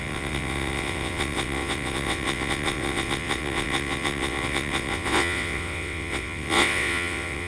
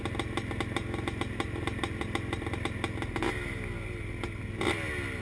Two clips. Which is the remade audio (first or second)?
first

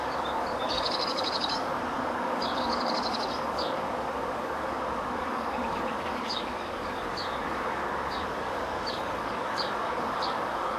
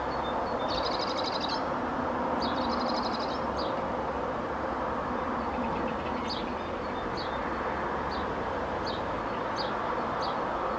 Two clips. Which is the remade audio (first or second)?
first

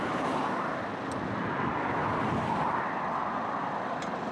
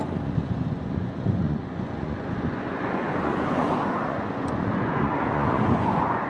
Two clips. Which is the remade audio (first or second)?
second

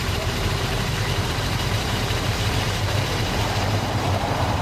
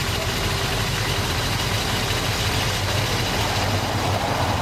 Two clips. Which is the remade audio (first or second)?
first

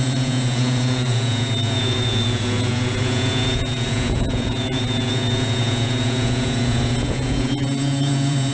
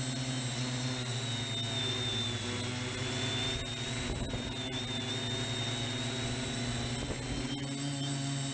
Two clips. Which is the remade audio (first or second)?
first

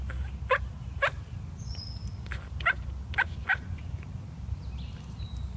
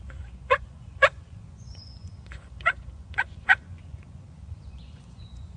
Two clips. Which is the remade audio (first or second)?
second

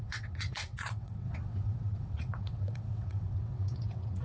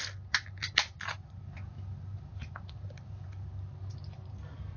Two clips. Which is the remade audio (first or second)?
first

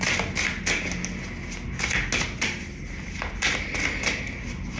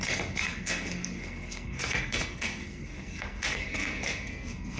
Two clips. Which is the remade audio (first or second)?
second